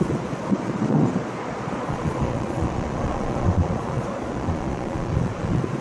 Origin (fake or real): fake